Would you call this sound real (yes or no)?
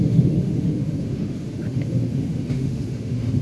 no